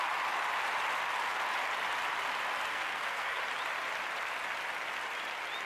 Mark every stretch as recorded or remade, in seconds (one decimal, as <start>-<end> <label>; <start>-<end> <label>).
0.0-2.7 recorded; 2.7-3.4 remade; 3.4-5.7 recorded